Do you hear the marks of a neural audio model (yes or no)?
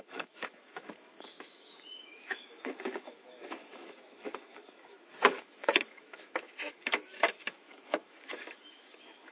yes